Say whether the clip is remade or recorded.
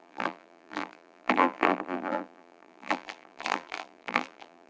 remade